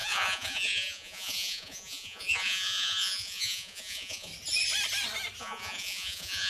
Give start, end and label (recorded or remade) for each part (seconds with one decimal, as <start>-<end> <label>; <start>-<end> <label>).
0.0-4.3 remade; 4.3-5.4 recorded; 5.4-6.5 remade